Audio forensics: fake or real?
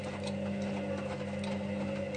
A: real